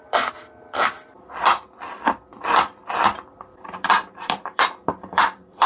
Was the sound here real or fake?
fake